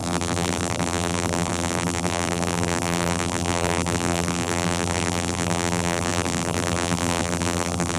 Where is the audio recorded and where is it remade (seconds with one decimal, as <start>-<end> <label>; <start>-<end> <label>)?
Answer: 0.0-8.0 remade